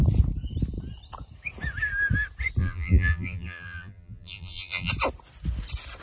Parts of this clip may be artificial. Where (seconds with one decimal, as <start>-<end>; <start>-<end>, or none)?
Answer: 2.6-4.9